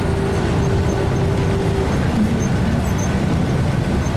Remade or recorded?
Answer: recorded